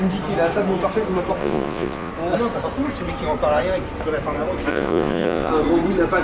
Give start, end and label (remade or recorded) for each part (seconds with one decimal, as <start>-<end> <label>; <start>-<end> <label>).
0.0-1.4 recorded; 1.4-2.1 remade; 2.1-4.7 recorded; 4.7-5.5 remade; 5.5-6.2 recorded